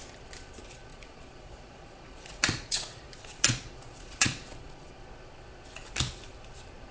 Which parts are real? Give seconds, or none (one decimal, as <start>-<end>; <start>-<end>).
0.0-0.9; 5.0-6.9